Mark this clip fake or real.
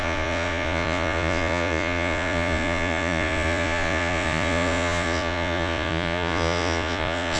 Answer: fake